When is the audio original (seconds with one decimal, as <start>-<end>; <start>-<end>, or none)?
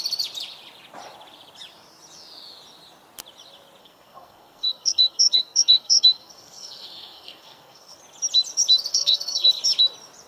0.0-3.8; 8.0-8.9; 9.6-10.3